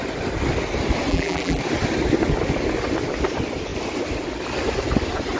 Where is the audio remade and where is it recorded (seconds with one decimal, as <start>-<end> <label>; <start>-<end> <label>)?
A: 0.0-1.1 recorded; 1.1-1.6 remade; 1.6-5.4 recorded